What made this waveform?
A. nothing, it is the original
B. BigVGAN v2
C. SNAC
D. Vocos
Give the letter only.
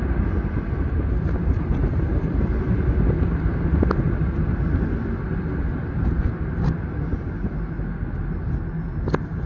A